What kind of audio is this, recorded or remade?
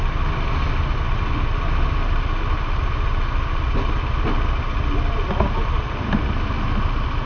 recorded